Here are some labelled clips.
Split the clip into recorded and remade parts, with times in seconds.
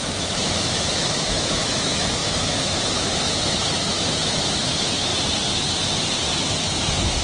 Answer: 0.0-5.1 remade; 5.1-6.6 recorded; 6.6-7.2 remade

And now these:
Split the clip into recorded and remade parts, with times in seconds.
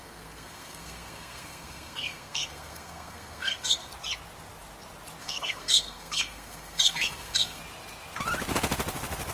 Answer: 0.0-3.9 remade; 3.9-5.2 recorded; 5.2-7.6 remade; 7.6-9.3 recorded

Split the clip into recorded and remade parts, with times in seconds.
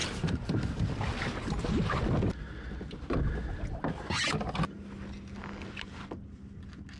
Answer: 0.0-0.7 remade; 0.7-7.0 recorded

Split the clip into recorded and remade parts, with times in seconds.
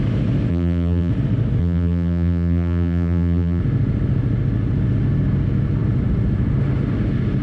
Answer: 0.0-0.5 recorded; 0.5-1.1 remade; 1.1-1.6 recorded; 1.6-3.6 remade; 3.6-7.4 recorded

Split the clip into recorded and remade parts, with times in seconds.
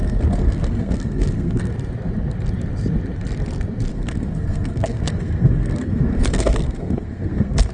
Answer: 0.0-1.7 remade; 1.7-3.9 recorded; 3.9-7.7 remade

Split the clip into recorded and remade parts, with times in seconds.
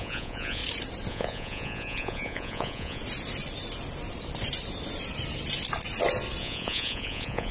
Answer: 0.0-0.6 remade; 0.6-1.1 recorded; 1.1-3.0 remade; 3.0-6.4 recorded; 6.4-7.5 remade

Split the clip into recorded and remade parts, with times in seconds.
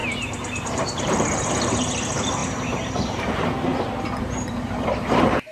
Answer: 0.0-5.5 remade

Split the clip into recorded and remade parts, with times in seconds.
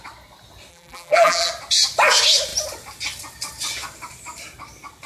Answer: 0.0-0.7 recorded; 0.7-1.5 remade; 1.5-5.1 recorded